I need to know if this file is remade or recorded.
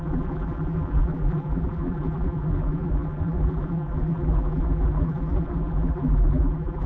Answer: remade